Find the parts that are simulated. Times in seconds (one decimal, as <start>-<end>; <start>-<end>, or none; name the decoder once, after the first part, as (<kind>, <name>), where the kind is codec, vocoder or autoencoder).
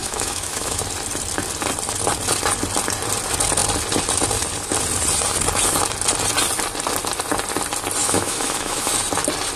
0.0-0.8 (autoencoder, DAC-VAE); 8.0-8.9